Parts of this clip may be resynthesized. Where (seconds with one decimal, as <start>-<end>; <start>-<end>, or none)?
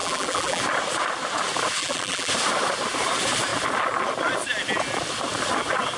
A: 0.0-0.6; 1.8-2.3